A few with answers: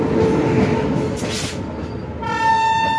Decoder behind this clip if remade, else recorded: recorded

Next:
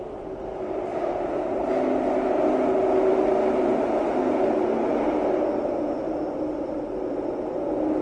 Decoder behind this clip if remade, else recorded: recorded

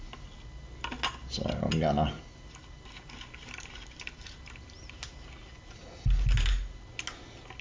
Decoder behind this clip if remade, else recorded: recorded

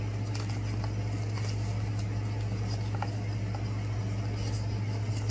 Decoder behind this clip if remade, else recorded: recorded